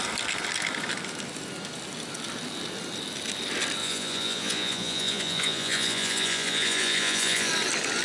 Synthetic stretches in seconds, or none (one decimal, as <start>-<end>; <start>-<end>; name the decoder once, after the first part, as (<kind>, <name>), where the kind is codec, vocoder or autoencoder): 3.8-7.5 (vocoder, Vocos)